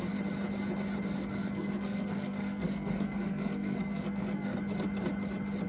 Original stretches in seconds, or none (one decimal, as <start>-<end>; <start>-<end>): 0.0-1.2; 4.6-5.7